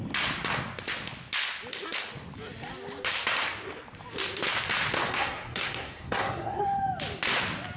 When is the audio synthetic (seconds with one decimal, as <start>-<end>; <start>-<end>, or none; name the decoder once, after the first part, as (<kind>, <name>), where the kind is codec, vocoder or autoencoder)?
5.1-6.6 (codec, SNAC)